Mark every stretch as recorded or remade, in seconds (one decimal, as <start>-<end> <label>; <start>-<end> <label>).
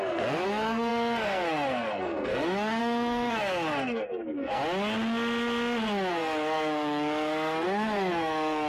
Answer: 0.0-4.6 remade; 4.6-6.1 recorded; 6.1-8.7 remade